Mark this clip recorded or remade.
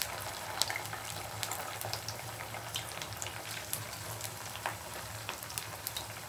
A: remade